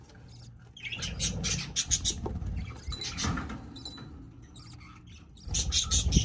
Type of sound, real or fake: real